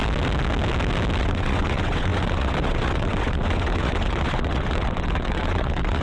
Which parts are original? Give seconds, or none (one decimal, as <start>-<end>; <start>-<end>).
0.0-1.2